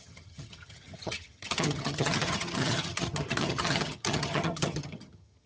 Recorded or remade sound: remade